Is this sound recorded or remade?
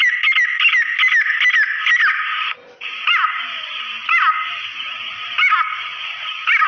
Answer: recorded